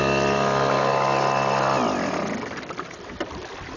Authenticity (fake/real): real